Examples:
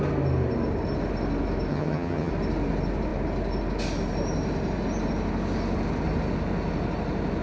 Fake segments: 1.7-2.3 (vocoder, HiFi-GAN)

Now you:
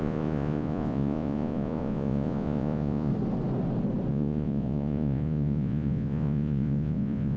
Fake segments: 0.0-3.1 (vocoder, Vocos); 4.1-7.4

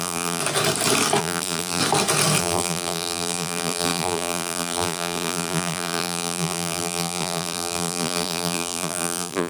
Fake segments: 0.0-0.4 (vocoder, BigVGAN v2); 1.2-1.8; 2.4-9.5